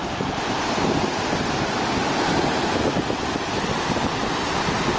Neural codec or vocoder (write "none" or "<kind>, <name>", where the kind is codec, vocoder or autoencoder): none